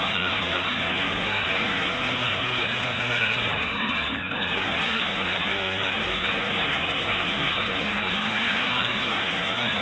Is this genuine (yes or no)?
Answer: no